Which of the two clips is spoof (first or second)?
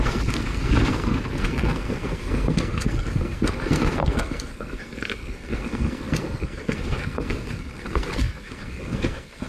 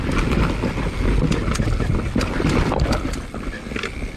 first